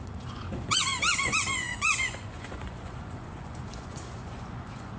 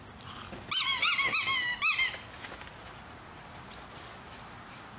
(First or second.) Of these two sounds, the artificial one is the first